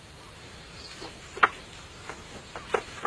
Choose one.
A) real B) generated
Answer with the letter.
B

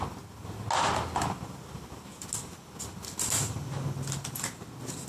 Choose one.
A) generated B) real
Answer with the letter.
B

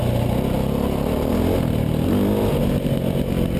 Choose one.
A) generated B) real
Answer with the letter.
B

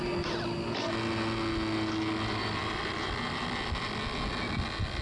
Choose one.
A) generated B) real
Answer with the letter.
B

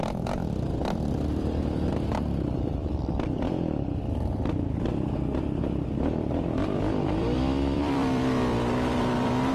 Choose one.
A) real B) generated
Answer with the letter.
B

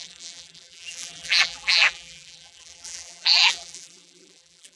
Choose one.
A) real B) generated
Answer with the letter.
B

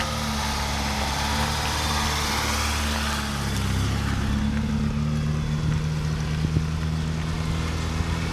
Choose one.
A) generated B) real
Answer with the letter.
B